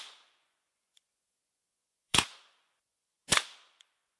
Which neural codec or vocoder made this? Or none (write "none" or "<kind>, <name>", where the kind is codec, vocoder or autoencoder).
vocoder, Vocos